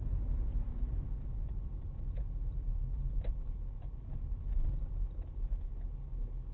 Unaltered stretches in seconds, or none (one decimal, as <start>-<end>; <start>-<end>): 0.0-6.5